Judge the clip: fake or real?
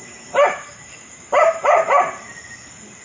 real